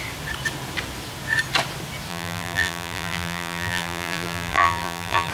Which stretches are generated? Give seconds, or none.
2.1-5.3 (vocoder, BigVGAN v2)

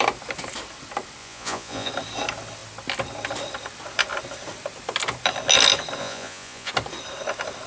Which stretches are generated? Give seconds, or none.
1.2-1.9 (vocoder, Vocos); 6.0-6.7

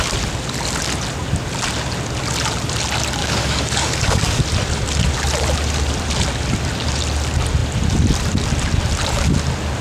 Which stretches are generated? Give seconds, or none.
3.2-4.4 (codec, DAC)

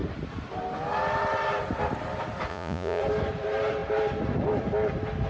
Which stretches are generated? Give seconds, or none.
2.5-3.0 (vocoder, Vocos)